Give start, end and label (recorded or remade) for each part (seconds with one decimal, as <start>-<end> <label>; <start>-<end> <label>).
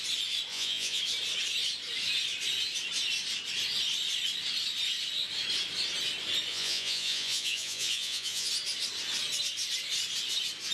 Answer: 0.0-0.5 recorded; 0.5-1.0 remade; 1.0-6.5 recorded; 6.5-8.5 remade; 8.5-10.7 recorded